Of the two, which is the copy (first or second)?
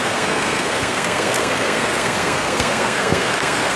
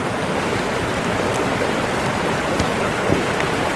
first